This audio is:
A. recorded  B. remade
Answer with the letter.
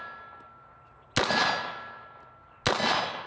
A